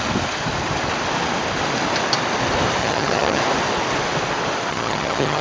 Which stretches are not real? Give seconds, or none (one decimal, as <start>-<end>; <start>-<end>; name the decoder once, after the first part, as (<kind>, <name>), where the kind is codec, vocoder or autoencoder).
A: 2.8-3.4 (vocoder, HiFi-GAN); 4.7-5.4